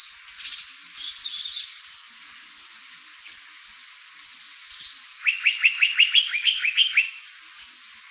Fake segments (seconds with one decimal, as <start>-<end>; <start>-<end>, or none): none

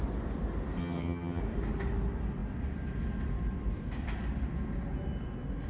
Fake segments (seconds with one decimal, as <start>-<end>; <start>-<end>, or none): 0.8-1.4